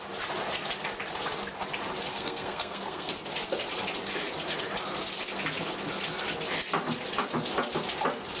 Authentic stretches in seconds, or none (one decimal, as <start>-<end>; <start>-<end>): 0.0-2.1; 3.1-8.4